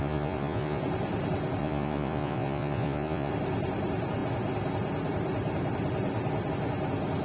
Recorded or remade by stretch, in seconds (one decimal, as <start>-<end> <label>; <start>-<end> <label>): 0.0-0.8 remade; 0.8-1.6 recorded; 1.6-3.3 remade; 3.3-7.2 recorded